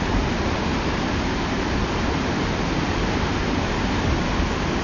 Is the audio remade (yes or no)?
yes